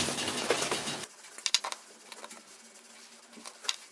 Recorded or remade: recorded